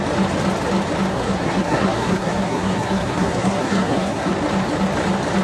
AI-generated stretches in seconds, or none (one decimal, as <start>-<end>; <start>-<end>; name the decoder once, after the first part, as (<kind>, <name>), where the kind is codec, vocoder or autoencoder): 1.1-4.3 (codec, SNAC)